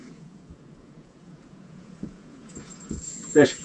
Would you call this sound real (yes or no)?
no